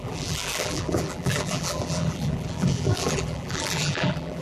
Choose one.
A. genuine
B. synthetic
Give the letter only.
B